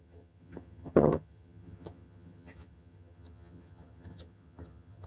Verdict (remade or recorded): remade